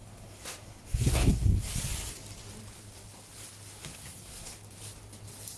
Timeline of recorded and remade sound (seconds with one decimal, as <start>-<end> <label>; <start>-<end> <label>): 0.0-1.5 remade; 1.5-3.8 recorded; 3.8-4.5 remade; 4.5-5.6 recorded